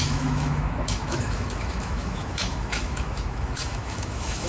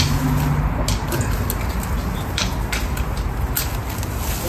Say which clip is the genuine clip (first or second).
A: second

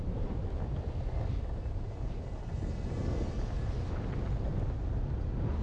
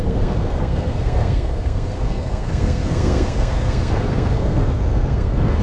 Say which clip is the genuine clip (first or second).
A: first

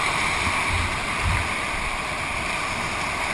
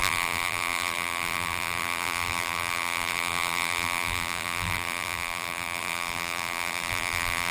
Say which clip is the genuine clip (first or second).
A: first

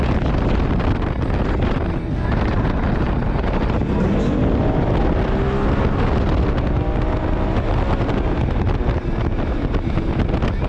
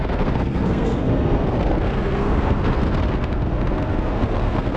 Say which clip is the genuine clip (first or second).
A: first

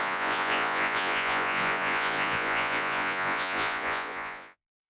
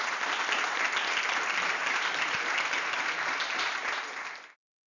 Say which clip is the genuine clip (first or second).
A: second